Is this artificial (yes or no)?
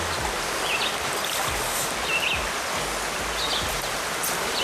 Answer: no